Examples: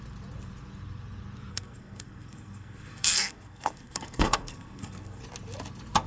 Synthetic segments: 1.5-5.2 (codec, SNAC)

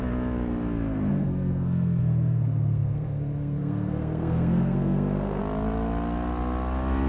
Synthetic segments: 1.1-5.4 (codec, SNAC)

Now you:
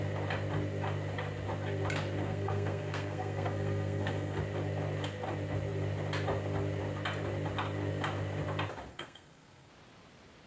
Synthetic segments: 2.2-4.4 (codec, SNAC); 8.9-9.7

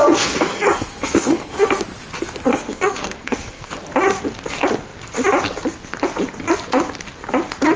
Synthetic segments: 0.0-1.8 (codec, SNAC); 2.5-3.7

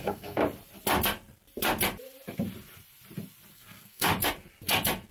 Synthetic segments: 0.0-0.4 (codec, SNAC); 3.5-4.1

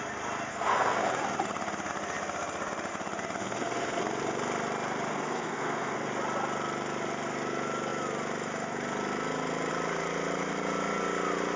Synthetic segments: 0.5-1.0 (codec, SNAC); 3.4-4.0; 5.1-6.1